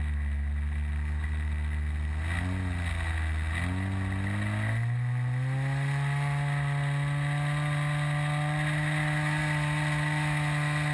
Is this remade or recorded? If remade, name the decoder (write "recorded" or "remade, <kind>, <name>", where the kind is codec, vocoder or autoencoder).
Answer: recorded